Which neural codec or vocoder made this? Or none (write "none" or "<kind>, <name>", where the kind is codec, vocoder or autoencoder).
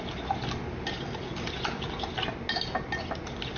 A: none